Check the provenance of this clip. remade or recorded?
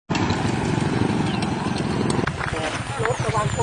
recorded